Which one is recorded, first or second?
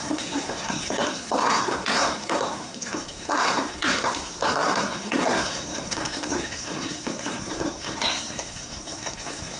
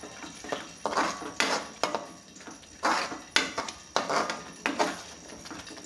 second